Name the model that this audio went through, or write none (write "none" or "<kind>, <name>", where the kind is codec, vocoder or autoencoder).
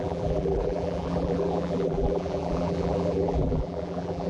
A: vocoder, BigVGAN v2